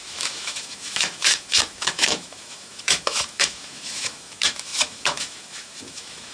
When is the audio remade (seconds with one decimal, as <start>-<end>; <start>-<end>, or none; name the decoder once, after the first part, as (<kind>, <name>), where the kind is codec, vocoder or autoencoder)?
0.0-6.3 (autoencoder, DAC-VAE)